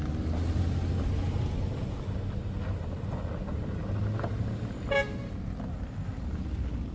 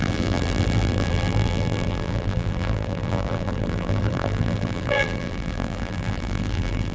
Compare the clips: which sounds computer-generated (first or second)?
second